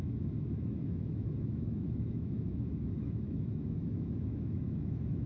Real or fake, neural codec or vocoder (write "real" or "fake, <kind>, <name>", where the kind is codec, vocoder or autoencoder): fake, autoencoder, DAC-VAE